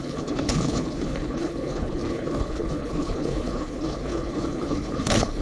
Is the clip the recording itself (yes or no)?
no